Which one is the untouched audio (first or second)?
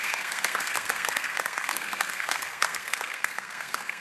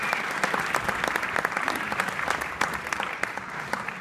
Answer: second